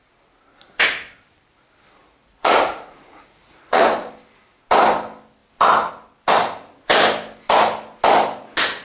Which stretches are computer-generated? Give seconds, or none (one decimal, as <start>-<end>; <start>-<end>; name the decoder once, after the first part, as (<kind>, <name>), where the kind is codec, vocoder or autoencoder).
2.0-4.1 (vocoder, Vocos)